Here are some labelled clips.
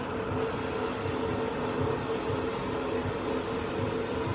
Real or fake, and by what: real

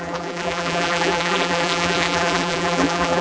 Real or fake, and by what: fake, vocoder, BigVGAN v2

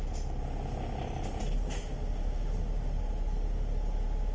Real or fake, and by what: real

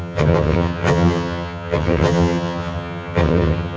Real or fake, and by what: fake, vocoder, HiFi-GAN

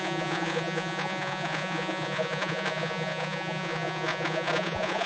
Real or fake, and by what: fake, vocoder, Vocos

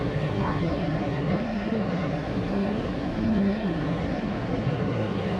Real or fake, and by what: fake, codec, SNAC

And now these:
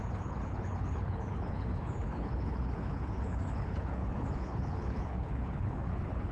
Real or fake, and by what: fake, codec, HILCodec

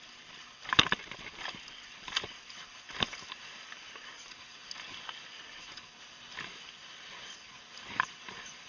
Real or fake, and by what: real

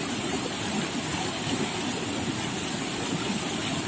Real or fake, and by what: real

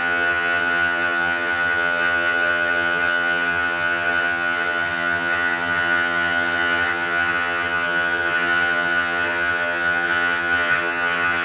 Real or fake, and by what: fake, vocoder, HiFi-GAN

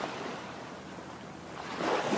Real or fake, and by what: real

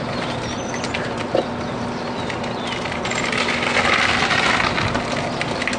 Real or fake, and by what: real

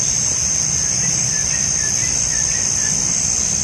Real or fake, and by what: real